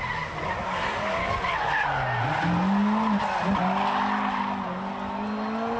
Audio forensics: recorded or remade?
recorded